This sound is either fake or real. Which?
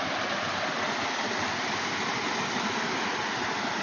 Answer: real